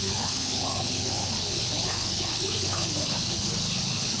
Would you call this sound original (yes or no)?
no